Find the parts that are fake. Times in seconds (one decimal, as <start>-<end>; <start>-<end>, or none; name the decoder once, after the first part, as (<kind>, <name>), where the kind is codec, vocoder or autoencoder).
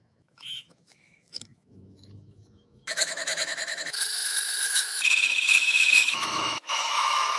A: 0.0-7.4 (autoencoder, DAC-VAE)